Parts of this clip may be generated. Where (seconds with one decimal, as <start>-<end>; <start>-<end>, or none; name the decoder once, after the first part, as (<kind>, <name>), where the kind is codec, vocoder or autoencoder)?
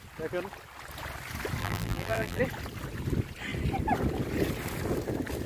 1.6-2.4 (vocoder, BigVGAN v2)